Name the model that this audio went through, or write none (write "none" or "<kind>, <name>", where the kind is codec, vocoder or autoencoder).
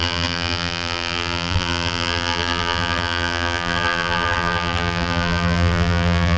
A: vocoder, BigVGAN v2